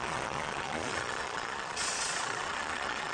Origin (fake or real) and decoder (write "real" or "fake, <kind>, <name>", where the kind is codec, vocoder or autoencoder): fake, vocoder, Vocos